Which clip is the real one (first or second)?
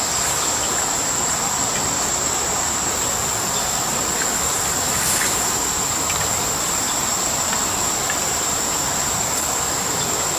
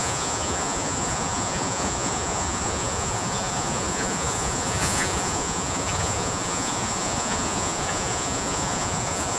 first